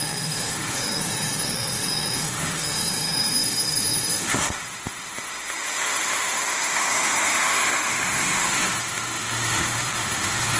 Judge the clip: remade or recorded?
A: remade